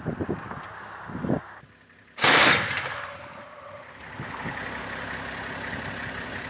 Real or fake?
real